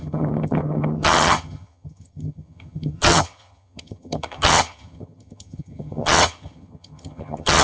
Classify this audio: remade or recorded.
remade